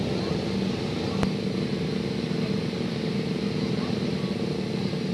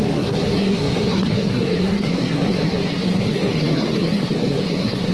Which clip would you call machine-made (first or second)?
second